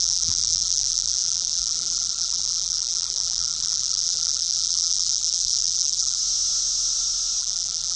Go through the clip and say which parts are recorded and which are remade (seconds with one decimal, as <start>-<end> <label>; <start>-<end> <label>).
0.0-6.2 remade; 6.2-7.4 recorded; 7.4-8.0 remade